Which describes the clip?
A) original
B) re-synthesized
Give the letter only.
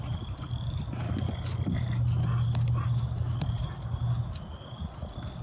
A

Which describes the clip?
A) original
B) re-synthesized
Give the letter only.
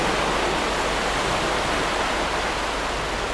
A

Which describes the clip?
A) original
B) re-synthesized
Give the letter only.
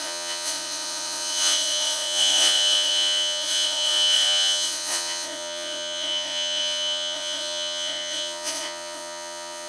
B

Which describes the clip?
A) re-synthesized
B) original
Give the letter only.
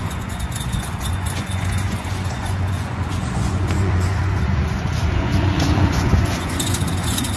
A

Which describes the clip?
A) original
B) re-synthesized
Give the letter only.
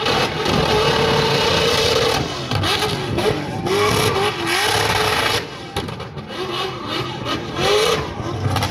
A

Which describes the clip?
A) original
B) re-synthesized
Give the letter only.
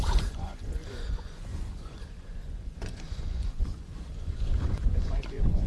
B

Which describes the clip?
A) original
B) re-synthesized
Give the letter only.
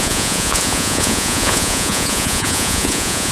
B